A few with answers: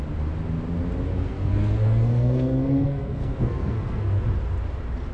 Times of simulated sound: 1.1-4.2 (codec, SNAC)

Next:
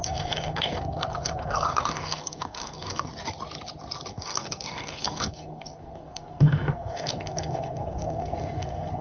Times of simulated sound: 0.0-3.1 (codec, SNAC); 4.1-9.0

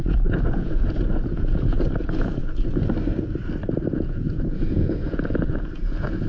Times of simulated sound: 0.0-2.4 (vocoder, Vocos); 3.9-6.3

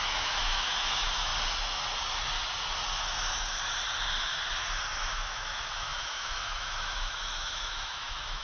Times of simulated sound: 0.0-1.3 (autoencoder, DAC-VAE); 5.0-8.4

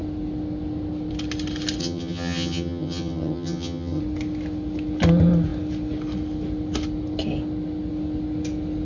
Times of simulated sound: 1.8-4.0 (vocoder, HiFi-GAN)

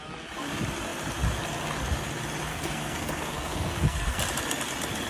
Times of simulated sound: 2.5-4.2 (codec, SNAC)